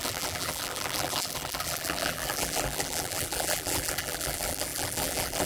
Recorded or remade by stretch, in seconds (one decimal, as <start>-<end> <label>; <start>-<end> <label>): 0.0-5.5 remade